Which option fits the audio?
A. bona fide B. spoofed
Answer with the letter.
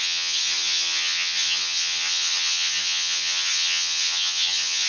B